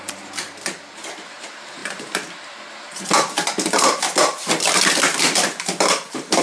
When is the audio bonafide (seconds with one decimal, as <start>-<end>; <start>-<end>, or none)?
0.0-6.4